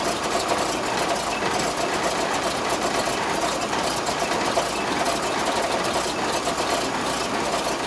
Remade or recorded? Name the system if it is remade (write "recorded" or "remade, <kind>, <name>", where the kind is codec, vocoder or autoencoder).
recorded